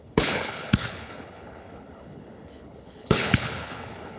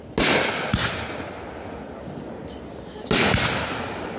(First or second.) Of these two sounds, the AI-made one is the first